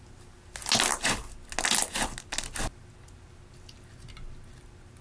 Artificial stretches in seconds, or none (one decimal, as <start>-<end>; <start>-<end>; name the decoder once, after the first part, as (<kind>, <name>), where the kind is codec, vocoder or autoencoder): none